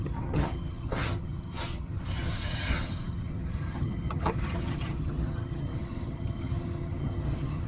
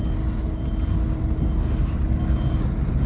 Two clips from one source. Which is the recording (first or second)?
second